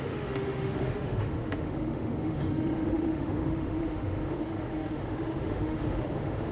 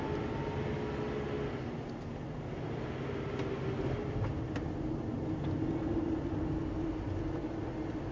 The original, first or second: second